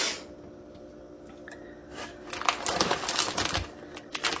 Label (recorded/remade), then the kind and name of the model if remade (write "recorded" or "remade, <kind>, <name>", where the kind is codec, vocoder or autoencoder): recorded